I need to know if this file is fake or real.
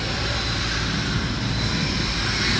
real